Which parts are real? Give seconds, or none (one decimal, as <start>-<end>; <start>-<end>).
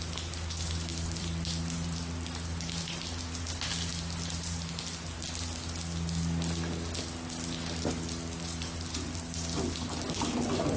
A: 3.9-7.0